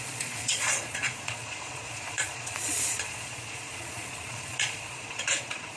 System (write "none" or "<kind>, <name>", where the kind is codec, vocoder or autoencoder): vocoder, Vocos